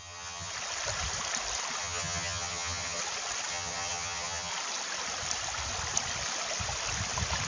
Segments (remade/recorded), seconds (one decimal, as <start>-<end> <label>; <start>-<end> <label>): 0.0-0.5 remade; 0.5-1.8 recorded; 1.8-3.0 remade; 3.0-3.5 recorded; 3.5-4.5 remade; 4.5-7.5 recorded